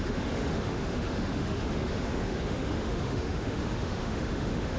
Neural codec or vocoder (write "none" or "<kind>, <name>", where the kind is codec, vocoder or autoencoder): autoencoder, DAC-VAE